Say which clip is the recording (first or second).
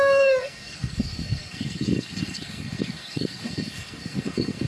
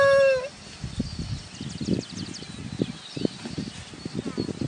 second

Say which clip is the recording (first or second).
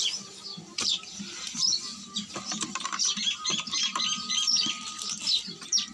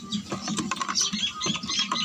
second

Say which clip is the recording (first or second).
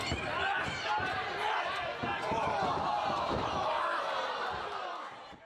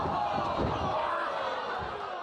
second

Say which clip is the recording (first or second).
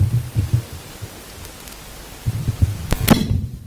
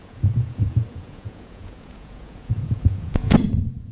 first